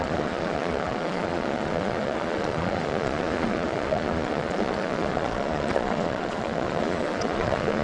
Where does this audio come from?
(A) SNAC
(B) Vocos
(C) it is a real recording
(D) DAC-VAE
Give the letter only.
B